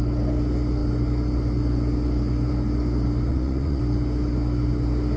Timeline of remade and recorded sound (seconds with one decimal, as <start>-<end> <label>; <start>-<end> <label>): 0.0-3.3 recorded; 3.3-3.8 remade; 3.8-5.2 recorded